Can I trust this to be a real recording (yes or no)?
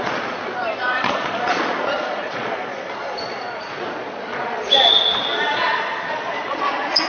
no